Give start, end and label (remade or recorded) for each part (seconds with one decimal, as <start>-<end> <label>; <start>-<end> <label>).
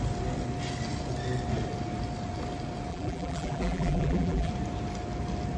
0.0-2.9 recorded; 2.9-4.5 remade; 4.5-5.6 recorded